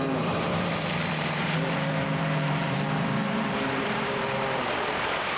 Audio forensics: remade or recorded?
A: remade